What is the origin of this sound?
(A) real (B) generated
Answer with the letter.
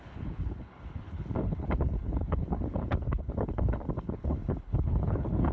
B